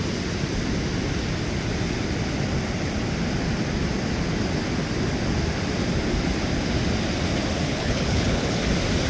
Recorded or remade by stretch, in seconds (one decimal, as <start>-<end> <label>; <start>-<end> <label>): 0.0-7.7 recorded; 7.7-8.6 remade; 8.6-9.1 recorded